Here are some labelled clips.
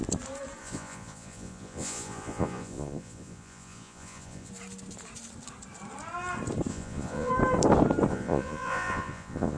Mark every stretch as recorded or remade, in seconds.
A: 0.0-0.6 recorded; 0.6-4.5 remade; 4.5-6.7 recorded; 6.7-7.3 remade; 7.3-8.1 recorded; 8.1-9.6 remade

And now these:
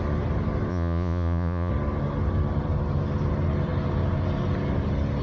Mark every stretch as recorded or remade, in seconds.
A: 0.0-0.7 recorded; 0.7-1.7 remade; 1.7-5.2 recorded

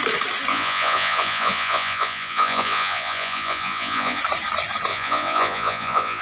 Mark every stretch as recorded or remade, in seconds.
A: 0.0-0.5 recorded; 0.5-4.2 remade; 4.2-4.9 recorded; 4.9-6.2 remade

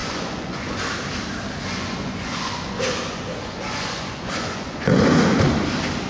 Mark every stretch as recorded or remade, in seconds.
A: 0.0-0.9 remade; 0.9-1.7 recorded; 1.7-5.4 remade; 5.4-6.1 recorded

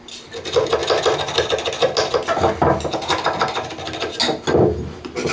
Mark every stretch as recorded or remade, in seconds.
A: 0.0-5.3 recorded

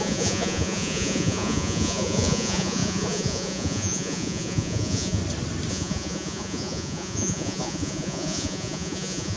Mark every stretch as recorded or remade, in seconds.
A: 0.0-5.2 remade; 5.2-5.7 recorded; 5.7-9.4 remade

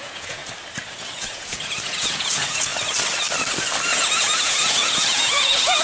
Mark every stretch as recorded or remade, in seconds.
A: 0.0-0.4 remade; 0.4-1.0 recorded; 1.0-2.7 remade; 2.7-3.9 recorded; 3.9-5.8 remade